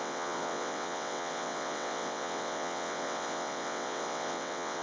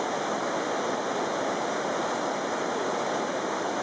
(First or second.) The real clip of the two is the second